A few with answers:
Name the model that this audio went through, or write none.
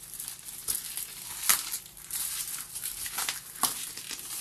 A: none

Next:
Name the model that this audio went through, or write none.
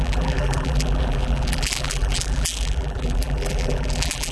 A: vocoder, BigVGAN v2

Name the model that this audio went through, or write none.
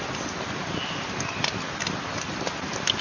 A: none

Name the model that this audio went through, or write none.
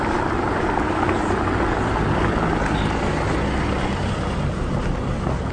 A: none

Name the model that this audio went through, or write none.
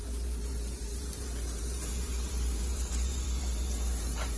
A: vocoder, BigVGAN v2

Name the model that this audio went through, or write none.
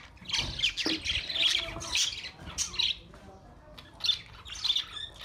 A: none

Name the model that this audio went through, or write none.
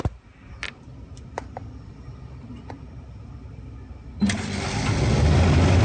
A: none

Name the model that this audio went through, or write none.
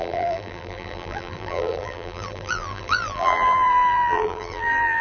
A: vocoder, BigVGAN v2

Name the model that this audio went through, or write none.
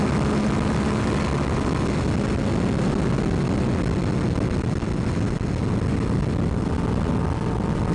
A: none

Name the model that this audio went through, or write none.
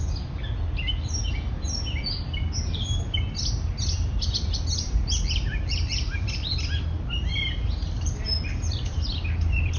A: none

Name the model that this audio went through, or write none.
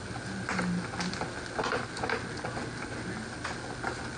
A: none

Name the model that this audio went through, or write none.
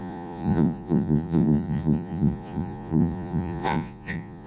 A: vocoder, Vocos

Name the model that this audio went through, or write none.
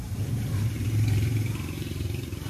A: vocoder, BigVGAN v2